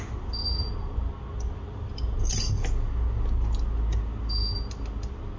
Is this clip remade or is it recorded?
recorded